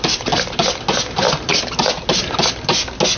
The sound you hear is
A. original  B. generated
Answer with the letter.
A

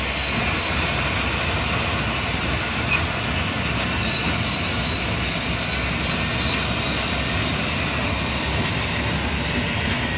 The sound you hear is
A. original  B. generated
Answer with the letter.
A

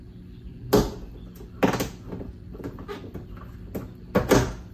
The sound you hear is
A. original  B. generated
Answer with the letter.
A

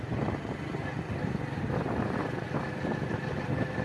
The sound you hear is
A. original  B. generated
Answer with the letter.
A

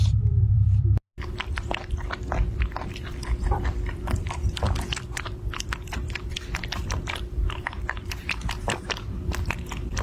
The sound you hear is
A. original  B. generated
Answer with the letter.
B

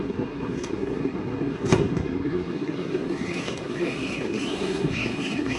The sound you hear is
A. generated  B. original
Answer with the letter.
A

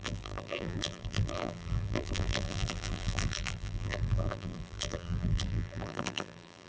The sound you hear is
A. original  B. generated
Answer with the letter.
B